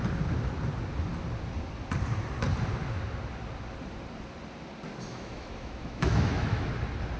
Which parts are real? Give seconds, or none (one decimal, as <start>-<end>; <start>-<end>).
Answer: 0.0-5.1; 6.7-7.2